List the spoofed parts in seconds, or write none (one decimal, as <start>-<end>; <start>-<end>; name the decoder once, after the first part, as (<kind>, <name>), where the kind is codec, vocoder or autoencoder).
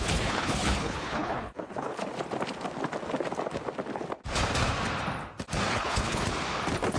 0.0-2.0 (codec, HILCodec); 5.7-6.2